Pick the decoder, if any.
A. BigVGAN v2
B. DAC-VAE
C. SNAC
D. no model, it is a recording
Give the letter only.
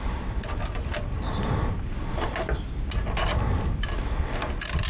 D